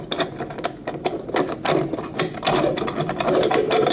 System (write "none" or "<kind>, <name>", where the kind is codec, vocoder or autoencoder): none